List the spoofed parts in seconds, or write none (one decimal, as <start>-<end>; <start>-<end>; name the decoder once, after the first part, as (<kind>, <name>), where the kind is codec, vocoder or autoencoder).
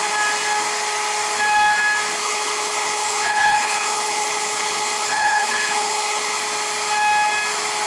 2.2-6.4 (codec, HILCodec)